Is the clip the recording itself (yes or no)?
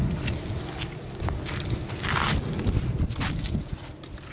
yes